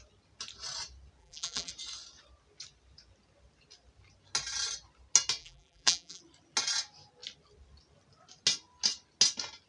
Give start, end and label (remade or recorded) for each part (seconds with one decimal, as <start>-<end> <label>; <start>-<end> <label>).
0.0-1.2 recorded; 1.2-1.7 remade; 1.7-5.4 recorded; 5.4-6.2 remade; 6.2-9.7 recorded